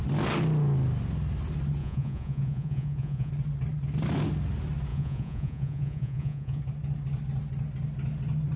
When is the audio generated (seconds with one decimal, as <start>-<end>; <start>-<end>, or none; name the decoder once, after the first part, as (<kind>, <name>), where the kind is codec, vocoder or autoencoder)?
1.8-3.3 (vocoder, Vocos); 4.9-6.6